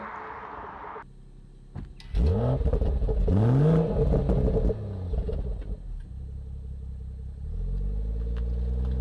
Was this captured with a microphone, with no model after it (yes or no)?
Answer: yes